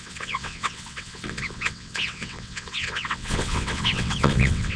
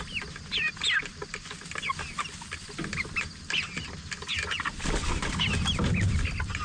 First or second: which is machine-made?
first